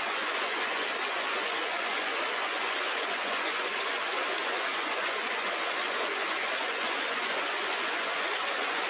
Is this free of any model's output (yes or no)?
no